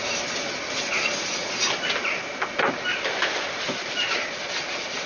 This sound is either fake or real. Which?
real